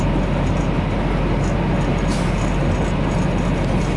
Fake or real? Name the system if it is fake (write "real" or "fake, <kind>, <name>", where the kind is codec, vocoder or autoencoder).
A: real